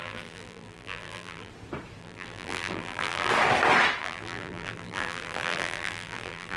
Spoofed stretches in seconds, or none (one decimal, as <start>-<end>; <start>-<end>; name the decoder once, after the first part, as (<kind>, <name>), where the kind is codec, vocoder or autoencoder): 0.0-1.5 (vocoder, BigVGAN v2); 2.0-3.3; 4.0-6.6